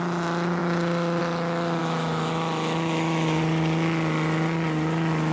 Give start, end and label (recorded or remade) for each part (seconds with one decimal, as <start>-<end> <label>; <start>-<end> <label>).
0.0-1.8 recorded; 1.8-3.4 remade; 3.4-5.3 recorded